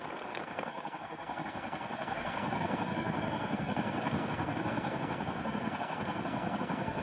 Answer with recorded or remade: remade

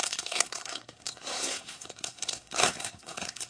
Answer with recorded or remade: remade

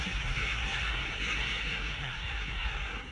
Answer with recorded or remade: remade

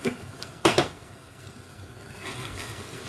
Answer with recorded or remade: remade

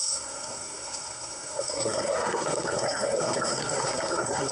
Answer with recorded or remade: remade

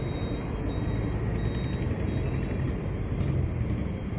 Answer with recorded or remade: recorded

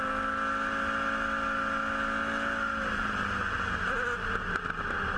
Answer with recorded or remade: recorded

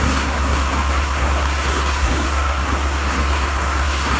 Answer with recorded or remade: remade